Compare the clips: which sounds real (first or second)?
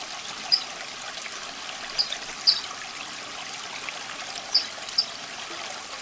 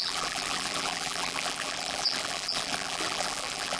first